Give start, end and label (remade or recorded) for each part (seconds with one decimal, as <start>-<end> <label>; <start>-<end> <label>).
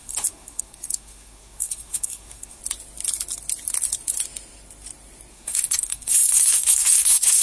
0.0-2.6 remade; 2.6-5.3 recorded; 5.3-7.4 remade